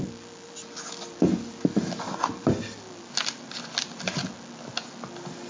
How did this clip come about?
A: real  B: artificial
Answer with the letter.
A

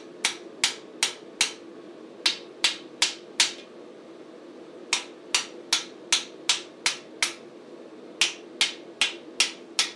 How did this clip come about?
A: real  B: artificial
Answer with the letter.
A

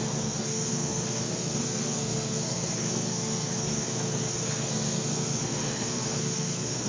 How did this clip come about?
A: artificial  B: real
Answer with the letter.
A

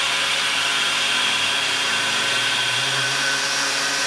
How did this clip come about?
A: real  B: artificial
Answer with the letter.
B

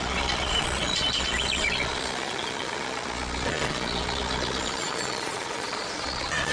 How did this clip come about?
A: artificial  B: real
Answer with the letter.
A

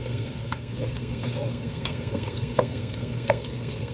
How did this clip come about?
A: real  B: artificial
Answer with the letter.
B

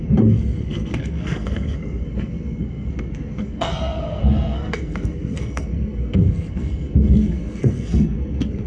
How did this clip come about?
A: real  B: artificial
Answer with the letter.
B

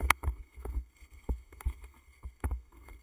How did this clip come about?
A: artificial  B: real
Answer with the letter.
A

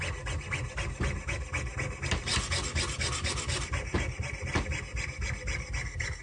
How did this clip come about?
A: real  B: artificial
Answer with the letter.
A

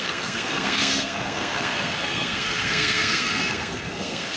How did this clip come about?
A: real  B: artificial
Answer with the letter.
B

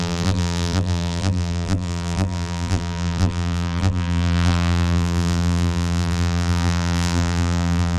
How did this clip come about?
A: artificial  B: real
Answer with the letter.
A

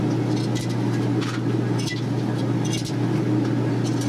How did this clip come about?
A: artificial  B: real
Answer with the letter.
B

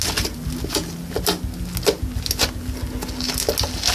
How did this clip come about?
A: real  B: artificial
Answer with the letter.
A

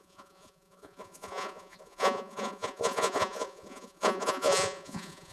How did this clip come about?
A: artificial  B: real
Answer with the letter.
A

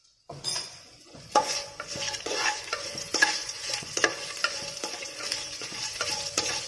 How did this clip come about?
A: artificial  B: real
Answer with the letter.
A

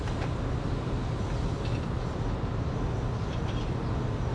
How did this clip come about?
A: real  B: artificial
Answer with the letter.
A